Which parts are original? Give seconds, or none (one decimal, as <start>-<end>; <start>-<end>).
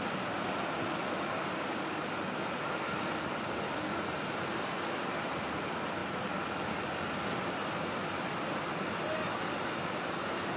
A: 0.0-10.6